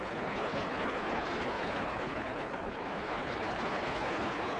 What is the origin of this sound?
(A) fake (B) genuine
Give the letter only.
A